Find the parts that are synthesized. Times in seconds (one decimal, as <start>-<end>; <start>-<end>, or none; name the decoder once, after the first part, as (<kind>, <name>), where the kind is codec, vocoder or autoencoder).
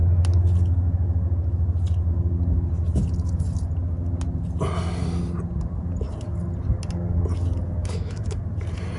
7.8-8.4 (autoencoder, DAC-VAE)